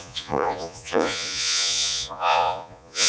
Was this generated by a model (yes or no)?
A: yes